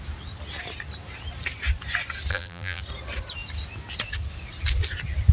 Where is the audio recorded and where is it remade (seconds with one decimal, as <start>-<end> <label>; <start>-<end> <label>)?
0.0-2.3 recorded; 2.3-2.8 remade; 2.8-5.3 recorded

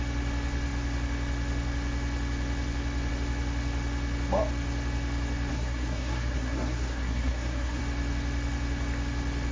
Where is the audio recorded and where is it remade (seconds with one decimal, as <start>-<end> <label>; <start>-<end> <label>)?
0.0-5.5 recorded; 5.5-7.8 remade; 7.8-9.5 recorded

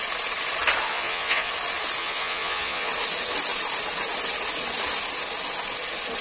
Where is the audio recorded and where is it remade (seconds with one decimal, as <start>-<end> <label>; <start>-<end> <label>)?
0.0-0.9 recorded; 0.9-1.5 remade; 1.5-2.0 recorded; 2.0-2.9 remade; 2.9-6.2 recorded

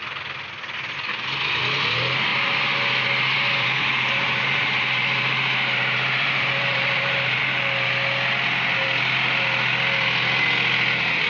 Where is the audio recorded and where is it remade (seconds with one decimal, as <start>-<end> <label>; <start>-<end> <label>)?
0.0-2.3 recorded; 2.3-7.4 remade; 7.4-11.3 recorded

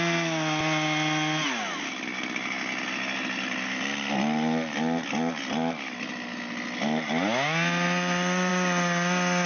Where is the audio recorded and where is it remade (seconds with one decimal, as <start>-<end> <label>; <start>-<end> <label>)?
0.0-9.5 recorded

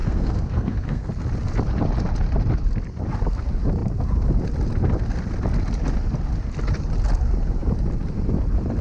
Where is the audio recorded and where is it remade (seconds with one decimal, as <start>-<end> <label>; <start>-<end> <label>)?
0.0-1.1 remade; 1.1-8.8 recorded

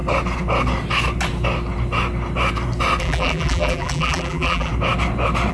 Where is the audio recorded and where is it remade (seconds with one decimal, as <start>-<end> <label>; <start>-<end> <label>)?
0.0-3.0 recorded; 3.0-4.7 remade; 4.7-5.5 recorded

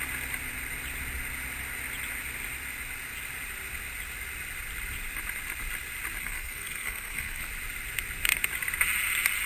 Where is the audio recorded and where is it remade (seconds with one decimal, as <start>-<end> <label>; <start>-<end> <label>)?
0.0-6.2 recorded; 6.2-7.5 remade; 7.5-9.5 recorded